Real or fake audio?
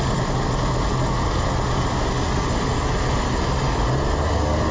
real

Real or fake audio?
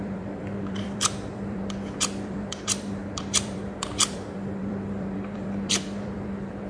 fake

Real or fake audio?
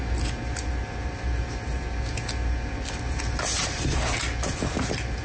real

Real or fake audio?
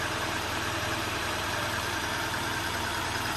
fake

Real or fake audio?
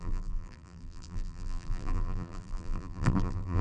fake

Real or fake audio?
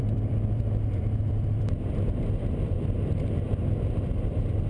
fake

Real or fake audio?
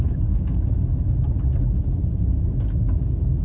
real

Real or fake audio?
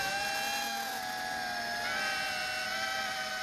real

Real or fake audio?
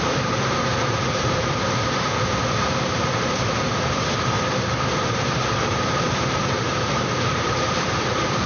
fake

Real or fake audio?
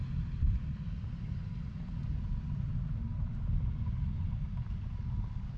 real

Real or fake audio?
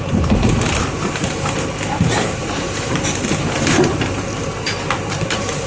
fake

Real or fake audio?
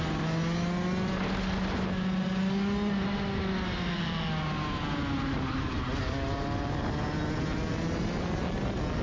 real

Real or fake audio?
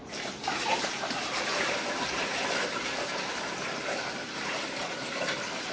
fake